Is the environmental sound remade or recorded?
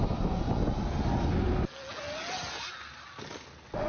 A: recorded